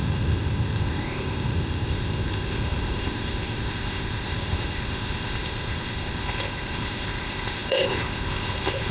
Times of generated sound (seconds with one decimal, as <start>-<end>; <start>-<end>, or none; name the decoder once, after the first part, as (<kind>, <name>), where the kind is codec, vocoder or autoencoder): 0.0-8.9 (codec, ZipCodec)

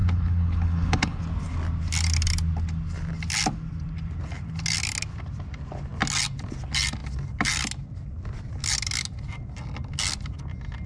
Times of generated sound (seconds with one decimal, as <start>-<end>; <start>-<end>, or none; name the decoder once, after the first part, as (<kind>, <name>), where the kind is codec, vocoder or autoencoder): 0.0-1.2 (codec, HILCodec)

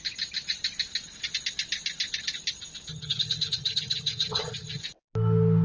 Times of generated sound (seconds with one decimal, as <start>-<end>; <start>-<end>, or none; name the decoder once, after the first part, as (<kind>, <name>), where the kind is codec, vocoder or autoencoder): 2.9-4.8 (vocoder, HiFi-GAN)

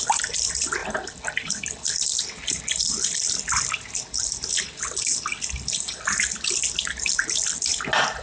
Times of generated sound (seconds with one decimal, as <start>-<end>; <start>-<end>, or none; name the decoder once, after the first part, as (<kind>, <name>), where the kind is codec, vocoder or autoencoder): 0.8-2.6 (vocoder, BigVGAN v2)

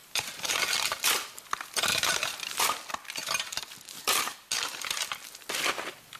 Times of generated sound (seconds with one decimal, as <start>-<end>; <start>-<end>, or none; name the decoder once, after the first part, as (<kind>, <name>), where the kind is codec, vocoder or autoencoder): 0.0-0.6 (vocoder, BigVGAN v2); 1.9-2.6; 3.2-4.0